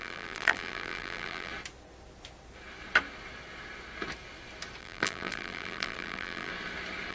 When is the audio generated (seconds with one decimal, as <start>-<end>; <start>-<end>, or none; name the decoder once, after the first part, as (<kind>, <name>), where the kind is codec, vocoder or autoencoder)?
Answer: 0.0-1.5 (vocoder, BigVGAN v2); 4.8-6.5